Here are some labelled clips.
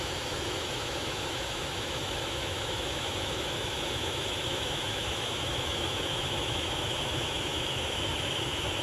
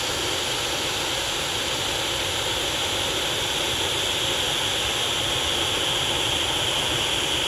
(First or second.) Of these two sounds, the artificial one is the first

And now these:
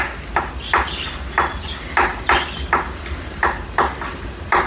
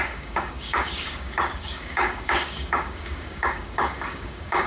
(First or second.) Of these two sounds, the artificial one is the second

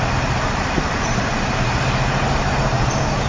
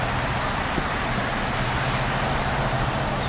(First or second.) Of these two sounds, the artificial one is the first